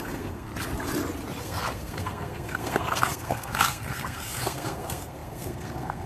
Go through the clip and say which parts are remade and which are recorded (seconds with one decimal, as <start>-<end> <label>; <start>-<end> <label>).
0.0-0.5 remade; 0.5-1.4 recorded; 1.4-6.1 remade

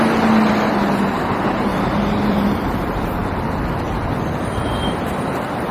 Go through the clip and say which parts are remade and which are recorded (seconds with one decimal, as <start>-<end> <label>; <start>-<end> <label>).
0.0-1.7 recorded; 1.7-5.1 remade; 5.1-5.7 recorded

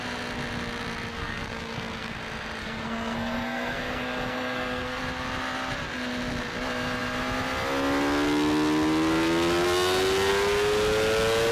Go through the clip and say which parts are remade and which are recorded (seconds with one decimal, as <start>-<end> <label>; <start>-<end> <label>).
0.0-1.1 recorded; 1.1-2.2 remade; 2.2-2.6 recorded; 2.6-5.0 remade; 5.0-11.5 recorded

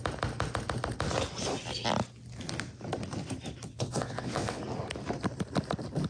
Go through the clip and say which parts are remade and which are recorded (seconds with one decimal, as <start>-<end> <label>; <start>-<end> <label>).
0.0-3.7 recorded; 3.7-4.6 remade; 4.6-6.1 recorded